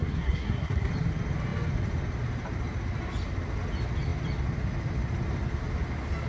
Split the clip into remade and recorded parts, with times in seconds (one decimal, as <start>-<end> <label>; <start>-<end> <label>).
0.0-0.9 remade; 0.9-6.3 recorded